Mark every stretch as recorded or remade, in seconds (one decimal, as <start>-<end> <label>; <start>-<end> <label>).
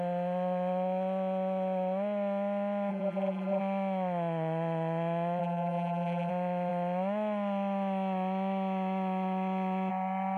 0.0-2.9 recorded; 2.9-3.6 remade; 3.6-5.4 recorded; 5.4-6.3 remade; 6.3-10.4 recorded